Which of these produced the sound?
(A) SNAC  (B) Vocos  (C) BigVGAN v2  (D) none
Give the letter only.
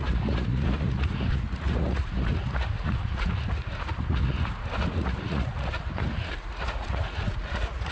B